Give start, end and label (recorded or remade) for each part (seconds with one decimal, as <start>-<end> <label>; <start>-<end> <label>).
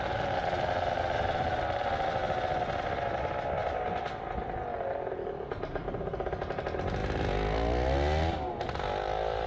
0.0-9.5 recorded